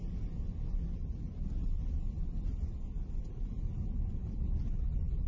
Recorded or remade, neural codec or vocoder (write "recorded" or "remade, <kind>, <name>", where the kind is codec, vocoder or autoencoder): recorded